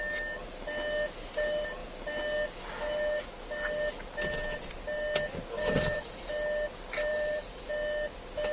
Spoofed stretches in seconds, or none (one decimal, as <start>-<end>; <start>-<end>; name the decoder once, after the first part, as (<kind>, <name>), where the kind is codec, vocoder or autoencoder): 5.6-6.3 (vocoder, BigVGAN v2); 7.1-7.7